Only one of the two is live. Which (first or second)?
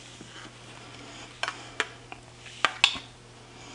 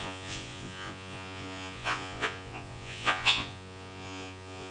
first